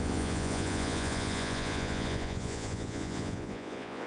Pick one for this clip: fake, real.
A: fake